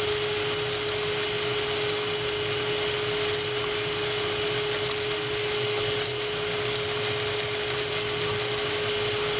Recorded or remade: recorded